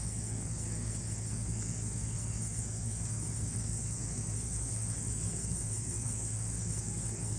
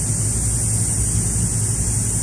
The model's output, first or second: first